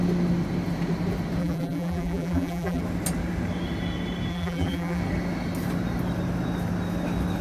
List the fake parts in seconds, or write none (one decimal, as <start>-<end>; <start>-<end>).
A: 1.4-2.8; 4.3-5.0